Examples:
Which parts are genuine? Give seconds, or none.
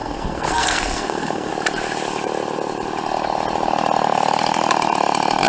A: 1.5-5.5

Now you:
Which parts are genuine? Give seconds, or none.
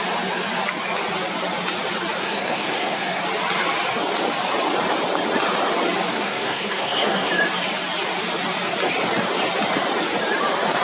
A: 0.0-2.2; 3.2-6.1; 7.3-10.8